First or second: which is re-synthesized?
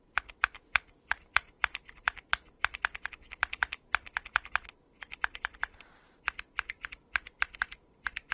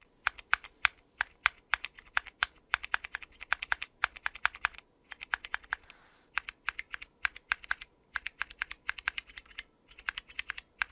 first